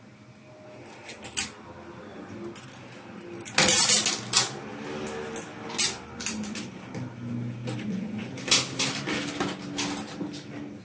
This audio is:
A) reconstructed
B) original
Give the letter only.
B